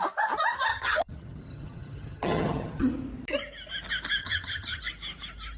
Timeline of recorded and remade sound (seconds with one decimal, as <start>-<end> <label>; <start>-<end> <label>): 0.0-0.7 recorded; 0.7-2.9 remade; 2.9-4.2 recorded; 4.2-4.8 remade; 4.8-5.6 recorded